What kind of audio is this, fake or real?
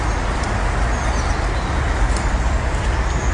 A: real